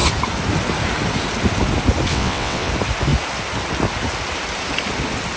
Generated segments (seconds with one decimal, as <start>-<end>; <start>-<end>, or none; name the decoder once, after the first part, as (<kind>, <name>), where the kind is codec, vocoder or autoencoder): 2.1-2.7 (vocoder, WaveNeXt)